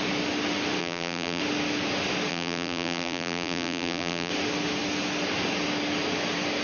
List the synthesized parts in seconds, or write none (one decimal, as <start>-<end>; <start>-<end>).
0.8-1.4; 2.3-4.3